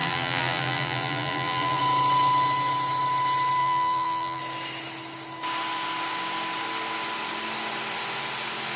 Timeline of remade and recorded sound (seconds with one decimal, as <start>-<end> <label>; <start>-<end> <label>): 0.0-1.8 remade; 1.8-3.6 recorded; 3.6-4.4 remade; 4.4-8.8 recorded